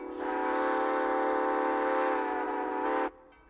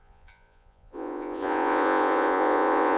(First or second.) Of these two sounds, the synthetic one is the second